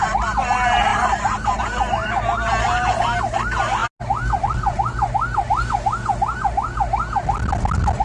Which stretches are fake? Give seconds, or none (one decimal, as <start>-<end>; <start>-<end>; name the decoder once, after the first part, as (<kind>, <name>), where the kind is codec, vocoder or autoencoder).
0.9-1.6 (vocoder, BigVGAN v2)